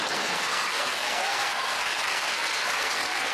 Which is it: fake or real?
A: fake